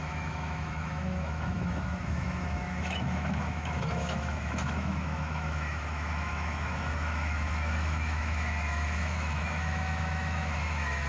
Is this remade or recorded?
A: remade